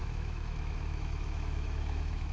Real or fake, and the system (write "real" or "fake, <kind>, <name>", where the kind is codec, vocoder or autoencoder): fake, autoencoder, DAC-VAE